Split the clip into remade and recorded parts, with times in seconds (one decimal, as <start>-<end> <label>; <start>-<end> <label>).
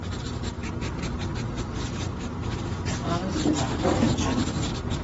0.0-5.0 recorded